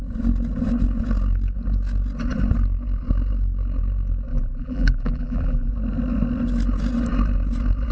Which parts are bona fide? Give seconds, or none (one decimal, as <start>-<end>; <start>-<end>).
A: 0.0-4.3; 5.7-7.9